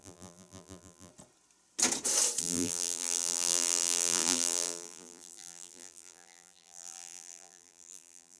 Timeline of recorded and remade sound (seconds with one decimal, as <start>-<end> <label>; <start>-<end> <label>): 0.0-1.1 remade; 1.1-2.4 recorded; 2.4-8.4 remade